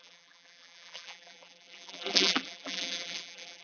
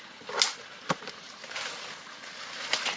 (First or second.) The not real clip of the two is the first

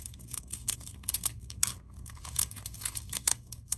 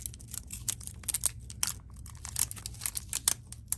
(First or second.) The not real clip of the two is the first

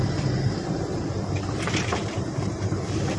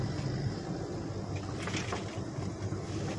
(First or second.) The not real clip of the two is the first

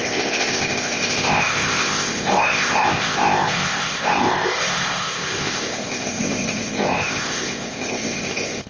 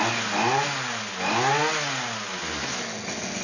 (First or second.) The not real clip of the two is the first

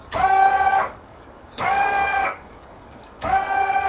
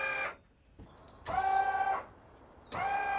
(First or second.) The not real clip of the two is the first